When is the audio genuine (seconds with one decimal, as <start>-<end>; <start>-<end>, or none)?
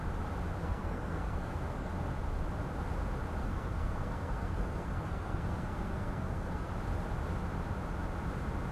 0.0-0.6; 1.9-3.4; 6.7-8.7